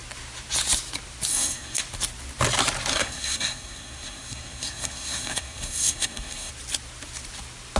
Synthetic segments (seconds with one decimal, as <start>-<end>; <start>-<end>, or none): 1.3-1.8; 2.9-6.5